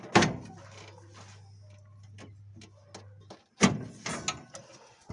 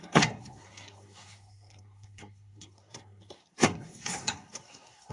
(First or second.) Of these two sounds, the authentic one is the first